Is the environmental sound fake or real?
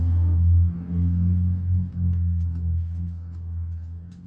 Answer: fake